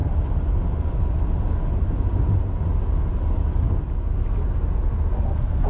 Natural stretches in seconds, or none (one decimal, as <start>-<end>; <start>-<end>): 0.0-5.7